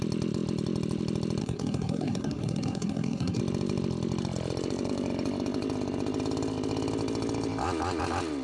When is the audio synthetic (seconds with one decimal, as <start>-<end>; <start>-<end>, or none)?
1.4-3.4